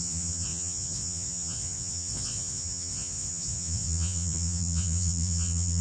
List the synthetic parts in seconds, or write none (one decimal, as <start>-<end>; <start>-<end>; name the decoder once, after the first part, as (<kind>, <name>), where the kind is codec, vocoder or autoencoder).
0.0-5.8 (vocoder, Vocos)